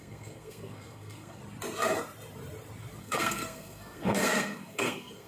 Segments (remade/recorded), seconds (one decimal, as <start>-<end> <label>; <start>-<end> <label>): 0.0-1.4 remade; 1.4-3.0 recorded; 3.0-5.3 remade